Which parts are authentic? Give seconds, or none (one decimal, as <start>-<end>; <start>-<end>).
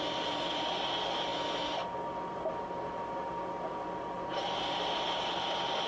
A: 0.0-5.9